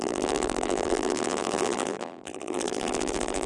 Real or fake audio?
fake